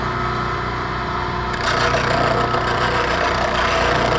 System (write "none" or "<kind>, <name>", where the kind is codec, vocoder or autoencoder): none